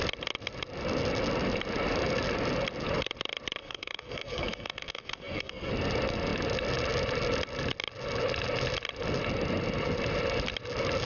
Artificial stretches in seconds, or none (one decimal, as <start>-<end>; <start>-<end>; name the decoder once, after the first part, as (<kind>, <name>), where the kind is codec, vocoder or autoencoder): 3.6-5.7 (codec, SNAC)